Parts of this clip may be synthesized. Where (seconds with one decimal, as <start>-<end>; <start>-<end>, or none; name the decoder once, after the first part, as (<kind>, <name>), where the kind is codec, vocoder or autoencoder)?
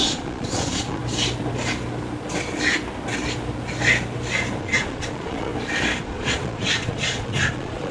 0.0-1.0 (vocoder, Vocos); 4.6-5.5; 6.0-7.9